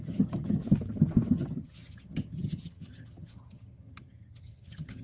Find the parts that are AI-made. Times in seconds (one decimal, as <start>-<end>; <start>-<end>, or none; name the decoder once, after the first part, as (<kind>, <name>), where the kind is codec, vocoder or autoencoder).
0.0-0.6 (vocoder, HiFi-GAN); 1.3-5.0

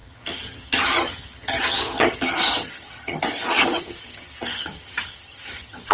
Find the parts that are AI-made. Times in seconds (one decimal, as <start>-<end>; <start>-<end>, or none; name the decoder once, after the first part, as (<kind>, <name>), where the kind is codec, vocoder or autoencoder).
0.0-5.9 (vocoder, HiFi-GAN)

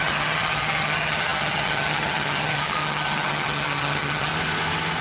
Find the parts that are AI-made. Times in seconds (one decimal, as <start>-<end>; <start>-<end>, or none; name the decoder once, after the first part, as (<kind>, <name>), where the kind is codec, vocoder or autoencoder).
0.0-4.3 (vocoder, HiFi-GAN)

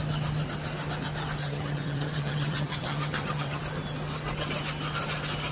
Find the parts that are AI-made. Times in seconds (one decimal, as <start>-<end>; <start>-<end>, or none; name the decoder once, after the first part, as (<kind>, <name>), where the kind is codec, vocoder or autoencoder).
1.4-3.6 (vocoder, HiFi-GAN)

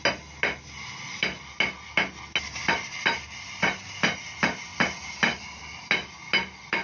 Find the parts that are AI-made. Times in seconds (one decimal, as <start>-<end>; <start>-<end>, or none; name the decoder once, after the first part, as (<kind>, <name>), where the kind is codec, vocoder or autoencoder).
none